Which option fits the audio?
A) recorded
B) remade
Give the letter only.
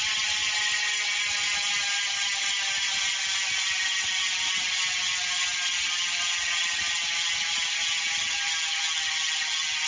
A